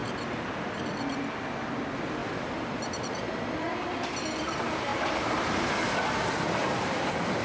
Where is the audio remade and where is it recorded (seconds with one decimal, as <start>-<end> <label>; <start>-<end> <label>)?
0.0-0.8 remade; 0.8-4.9 recorded; 4.9-5.7 remade; 5.7-6.6 recorded; 6.6-7.4 remade